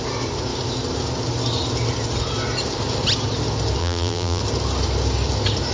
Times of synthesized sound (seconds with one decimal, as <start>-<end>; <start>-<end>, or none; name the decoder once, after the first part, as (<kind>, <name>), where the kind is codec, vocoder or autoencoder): 3.8-4.4 (vocoder, BigVGAN v2)